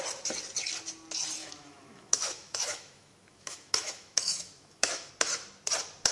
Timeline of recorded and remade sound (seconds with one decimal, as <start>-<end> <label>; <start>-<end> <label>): 0.0-1.4 recorded; 1.4-5.1 remade; 5.1-6.1 recorded